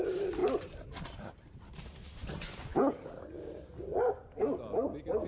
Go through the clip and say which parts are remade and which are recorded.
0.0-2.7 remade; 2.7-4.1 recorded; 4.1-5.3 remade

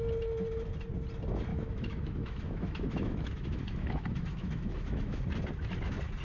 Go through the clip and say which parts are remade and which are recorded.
0.0-1.5 recorded; 1.5-5.2 remade; 5.2-6.2 recorded

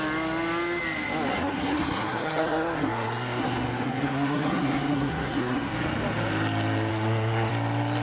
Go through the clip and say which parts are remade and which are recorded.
0.0-1.3 recorded; 1.3-5.7 remade; 5.7-6.9 recorded; 6.9-7.5 remade; 7.5-8.0 recorded

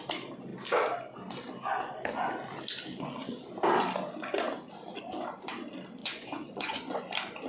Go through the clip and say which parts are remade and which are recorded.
0.0-6.0 recorded; 6.0-7.0 remade; 7.0-7.5 recorded

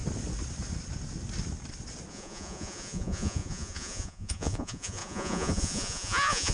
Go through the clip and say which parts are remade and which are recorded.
0.0-2.1 recorded; 2.1-6.5 remade

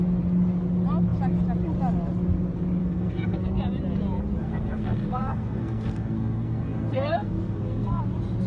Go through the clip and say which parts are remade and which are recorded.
0.0-2.8 recorded; 2.8-3.5 remade; 3.5-4.4 recorded; 4.4-8.0 remade; 8.0-8.5 recorded

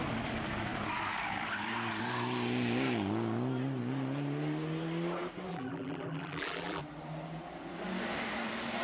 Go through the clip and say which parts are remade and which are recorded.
0.0-5.5 recorded; 5.5-6.8 remade; 6.8-8.8 recorded

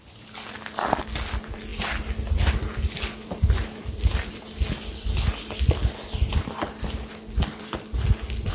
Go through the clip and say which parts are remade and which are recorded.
0.0-8.5 recorded